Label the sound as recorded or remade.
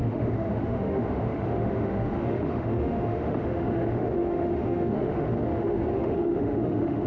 remade